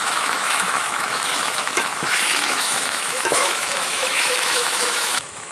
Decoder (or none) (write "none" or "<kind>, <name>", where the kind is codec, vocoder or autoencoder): autoencoder, DAC-VAE